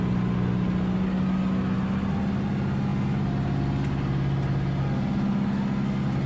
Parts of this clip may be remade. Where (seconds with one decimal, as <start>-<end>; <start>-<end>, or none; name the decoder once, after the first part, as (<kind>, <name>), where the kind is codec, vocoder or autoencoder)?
none